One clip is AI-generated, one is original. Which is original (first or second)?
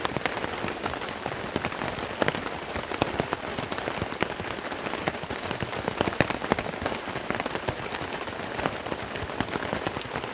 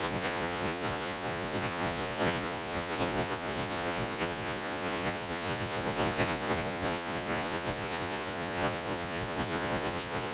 first